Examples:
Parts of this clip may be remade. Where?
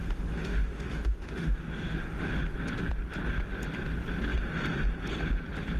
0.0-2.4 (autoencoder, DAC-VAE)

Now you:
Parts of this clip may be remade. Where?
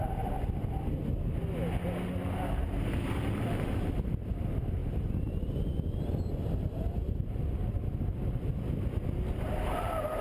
none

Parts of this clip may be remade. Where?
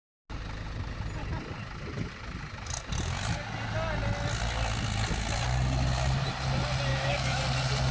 6.9-7.4 (autoencoder, DAC-VAE)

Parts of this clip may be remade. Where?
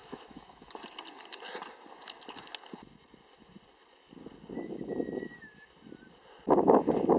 0.0-0.7 (autoencoder, DAC-VAE)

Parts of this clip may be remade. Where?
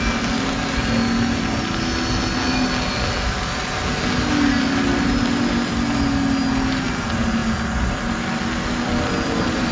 none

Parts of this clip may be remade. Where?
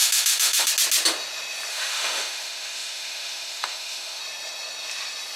0.0-0.7 (autoencoder, DAC-VAE); 1.7-4.2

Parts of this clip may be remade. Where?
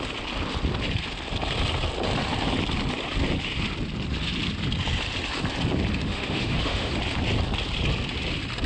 6.0-6.9 (autoencoder, DAC-VAE)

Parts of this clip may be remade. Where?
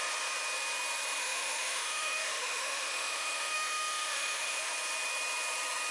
1.2-4.7 (autoencoder, DAC-VAE)